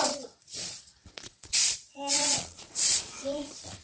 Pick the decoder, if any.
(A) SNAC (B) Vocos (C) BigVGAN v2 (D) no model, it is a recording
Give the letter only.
B